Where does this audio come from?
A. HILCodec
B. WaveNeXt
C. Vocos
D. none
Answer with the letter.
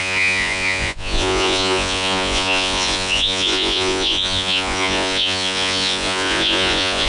C